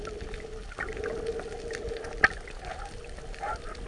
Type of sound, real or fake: real